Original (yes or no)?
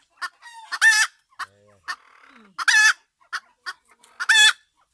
yes